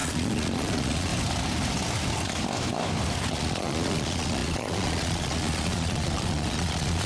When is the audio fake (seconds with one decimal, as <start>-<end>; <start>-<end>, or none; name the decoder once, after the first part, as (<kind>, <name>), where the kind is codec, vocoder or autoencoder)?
0.0-1.1 (vocoder, Vocos); 3.3-7.1